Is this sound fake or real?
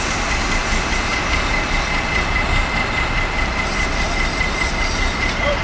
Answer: real